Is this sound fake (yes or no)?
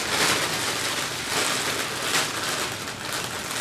no